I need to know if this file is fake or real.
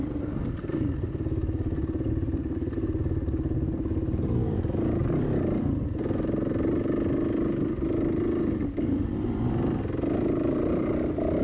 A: real